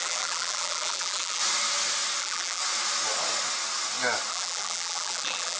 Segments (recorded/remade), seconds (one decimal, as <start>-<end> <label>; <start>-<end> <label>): 0.0-1.4 remade; 1.4-2.2 recorded; 2.2-2.6 remade; 2.6-4.3 recorded; 4.3-5.6 remade